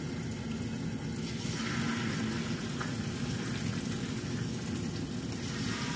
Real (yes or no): yes